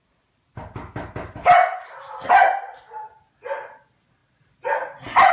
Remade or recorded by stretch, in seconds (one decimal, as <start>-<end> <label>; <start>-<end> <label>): 0.0-5.3 recorded